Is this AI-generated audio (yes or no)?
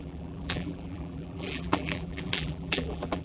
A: yes